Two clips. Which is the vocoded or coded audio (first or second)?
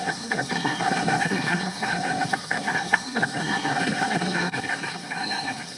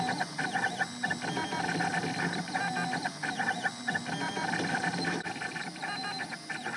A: first